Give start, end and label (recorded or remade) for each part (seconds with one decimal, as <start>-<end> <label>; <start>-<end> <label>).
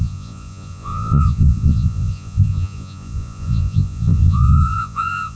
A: 0.0-5.4 remade